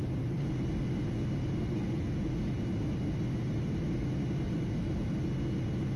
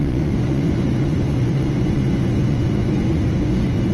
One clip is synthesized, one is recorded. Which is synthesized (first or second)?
second